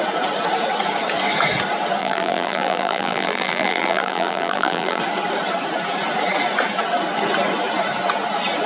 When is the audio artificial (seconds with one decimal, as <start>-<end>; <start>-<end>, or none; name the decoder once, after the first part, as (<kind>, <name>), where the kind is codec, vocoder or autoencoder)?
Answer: 2.0-5.0 (vocoder, BigVGAN v2)